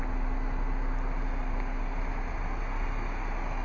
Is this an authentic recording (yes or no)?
yes